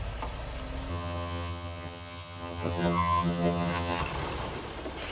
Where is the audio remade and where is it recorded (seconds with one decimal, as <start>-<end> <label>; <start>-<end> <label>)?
0.0-0.9 recorded; 0.9-4.0 remade; 4.0-5.1 recorded